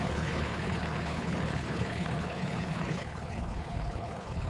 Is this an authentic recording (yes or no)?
no